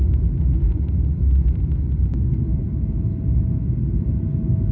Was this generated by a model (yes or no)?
no